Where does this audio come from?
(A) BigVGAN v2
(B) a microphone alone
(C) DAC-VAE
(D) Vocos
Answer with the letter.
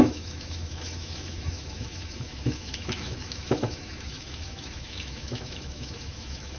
C